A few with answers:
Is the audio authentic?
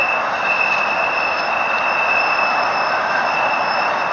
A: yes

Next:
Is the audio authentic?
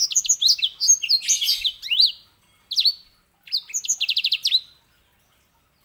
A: yes